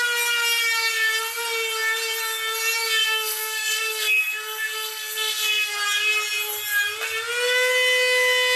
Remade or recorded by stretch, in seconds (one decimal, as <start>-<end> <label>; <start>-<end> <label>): 0.0-3.0 recorded; 3.0-5.7 remade; 5.7-8.6 recorded